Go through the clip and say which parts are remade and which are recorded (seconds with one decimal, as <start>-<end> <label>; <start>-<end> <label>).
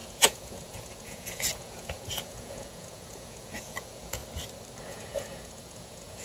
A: 0.0-4.2 remade; 4.2-4.8 recorded; 4.8-6.2 remade